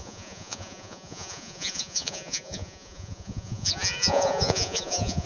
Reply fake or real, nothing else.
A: fake